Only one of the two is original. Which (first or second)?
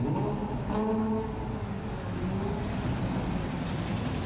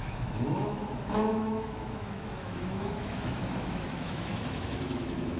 first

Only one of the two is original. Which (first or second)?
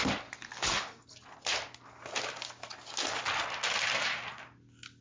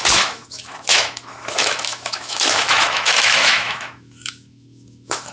first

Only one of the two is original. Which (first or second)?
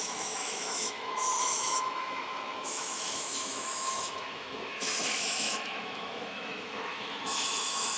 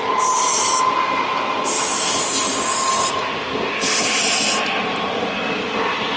second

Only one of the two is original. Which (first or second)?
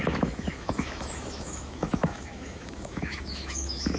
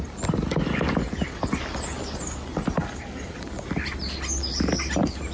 second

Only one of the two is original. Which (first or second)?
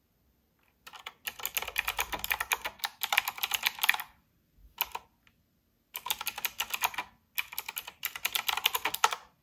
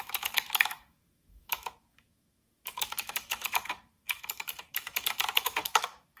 first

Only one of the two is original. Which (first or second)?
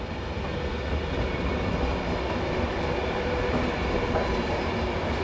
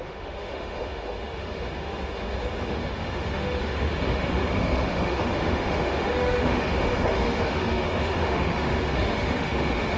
first